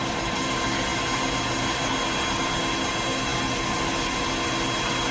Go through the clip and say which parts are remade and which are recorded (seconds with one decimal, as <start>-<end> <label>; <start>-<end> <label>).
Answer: 0.0-5.1 recorded

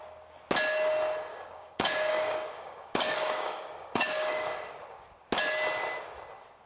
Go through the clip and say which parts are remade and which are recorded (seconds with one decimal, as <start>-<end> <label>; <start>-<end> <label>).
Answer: 0.0-1.3 recorded; 1.3-4.8 remade; 4.8-6.7 recorded

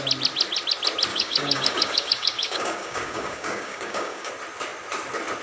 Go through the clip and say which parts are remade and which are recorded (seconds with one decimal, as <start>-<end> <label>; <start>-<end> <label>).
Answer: 0.0-1.1 recorded; 1.1-4.3 remade; 4.3-5.4 recorded

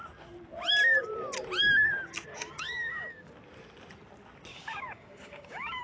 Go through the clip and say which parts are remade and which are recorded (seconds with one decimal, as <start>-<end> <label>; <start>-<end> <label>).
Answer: 0.0-2.3 recorded; 2.3-3.3 remade; 3.3-4.5 recorded; 4.5-5.8 remade

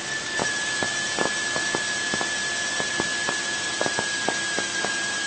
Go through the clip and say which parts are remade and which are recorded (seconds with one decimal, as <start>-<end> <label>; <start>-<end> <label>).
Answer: 0.0-5.3 recorded

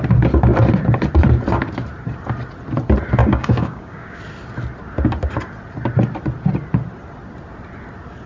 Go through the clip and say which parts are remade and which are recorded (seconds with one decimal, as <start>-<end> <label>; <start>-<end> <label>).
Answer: 0.0-3.2 recorded; 3.2-4.2 remade; 4.2-8.3 recorded

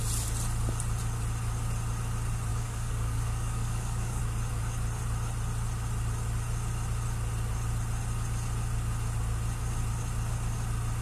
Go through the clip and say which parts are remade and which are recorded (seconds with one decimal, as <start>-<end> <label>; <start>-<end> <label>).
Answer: 0.0-2.5 recorded; 2.5-4.2 remade; 4.2-11.0 recorded